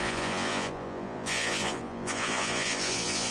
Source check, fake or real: fake